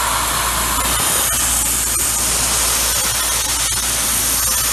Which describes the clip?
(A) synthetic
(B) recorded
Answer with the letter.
B